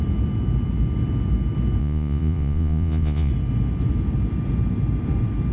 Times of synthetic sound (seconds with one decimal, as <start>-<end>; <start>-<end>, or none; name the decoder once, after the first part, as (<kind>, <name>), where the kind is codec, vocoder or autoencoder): 1.8-3.3 (vocoder, Vocos)

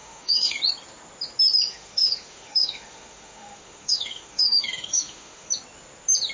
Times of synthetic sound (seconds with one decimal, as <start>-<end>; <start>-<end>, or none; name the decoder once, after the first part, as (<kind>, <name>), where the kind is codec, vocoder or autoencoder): 0.0-0.6 (autoencoder, DAC-VAE); 1.7-5.5

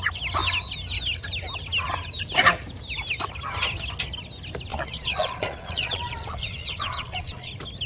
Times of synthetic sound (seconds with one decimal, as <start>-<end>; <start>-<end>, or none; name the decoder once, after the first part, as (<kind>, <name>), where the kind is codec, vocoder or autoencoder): 4.7-7.5 (vocoder, Vocos)

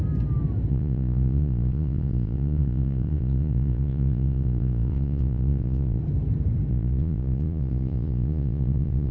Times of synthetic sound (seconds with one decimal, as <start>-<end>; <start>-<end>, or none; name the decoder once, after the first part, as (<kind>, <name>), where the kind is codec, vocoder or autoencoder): 0.7-6.0 (vocoder, Vocos); 6.7-9.1

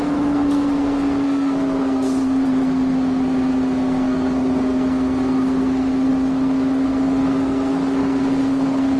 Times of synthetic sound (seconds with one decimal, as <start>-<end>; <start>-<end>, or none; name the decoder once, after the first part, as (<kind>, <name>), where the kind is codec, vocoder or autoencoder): 0.0-9.0 (codec, SNAC)

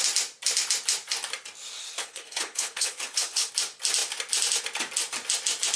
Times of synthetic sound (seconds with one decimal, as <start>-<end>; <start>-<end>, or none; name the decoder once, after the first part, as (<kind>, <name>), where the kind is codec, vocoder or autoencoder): 1.8-3.5 (codec, HILCodec)

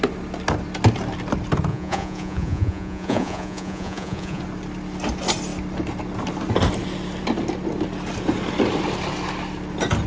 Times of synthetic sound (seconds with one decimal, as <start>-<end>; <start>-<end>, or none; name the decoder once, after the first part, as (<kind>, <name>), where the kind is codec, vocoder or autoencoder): 1.7-4.4 (vocoder, Vocos)

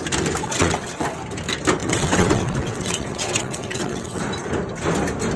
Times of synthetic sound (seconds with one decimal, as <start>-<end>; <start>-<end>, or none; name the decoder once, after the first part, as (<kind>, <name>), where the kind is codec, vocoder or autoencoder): 0.4-1.2 (vocoder, WaveNeXt); 1.8-4.2